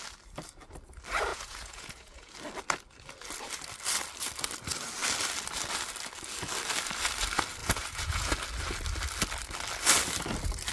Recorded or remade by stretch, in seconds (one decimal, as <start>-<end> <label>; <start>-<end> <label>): 0.0-1.3 recorded; 1.3-2.3 remade; 2.3-7.6 recorded; 7.6-8.3 remade; 8.3-10.7 recorded